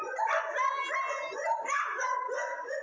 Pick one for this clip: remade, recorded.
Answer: recorded